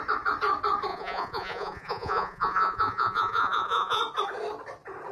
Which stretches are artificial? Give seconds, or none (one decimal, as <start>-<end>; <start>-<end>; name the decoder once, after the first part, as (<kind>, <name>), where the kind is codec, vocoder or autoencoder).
0.9-4.0 (vocoder, Vocos)

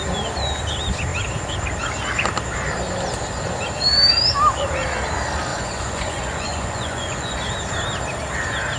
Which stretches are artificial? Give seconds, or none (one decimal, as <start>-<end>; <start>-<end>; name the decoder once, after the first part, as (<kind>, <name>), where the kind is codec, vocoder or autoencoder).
5.5-7.4 (vocoder, Vocos)

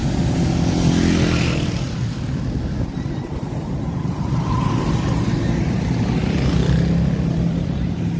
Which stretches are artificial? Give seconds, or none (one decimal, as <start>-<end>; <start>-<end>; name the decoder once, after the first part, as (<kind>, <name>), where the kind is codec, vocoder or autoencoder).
none